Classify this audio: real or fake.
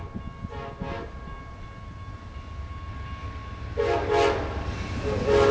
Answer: real